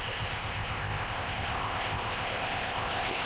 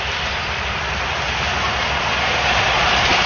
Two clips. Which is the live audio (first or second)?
second